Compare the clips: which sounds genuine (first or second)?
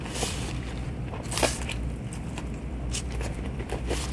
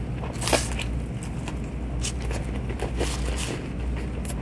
second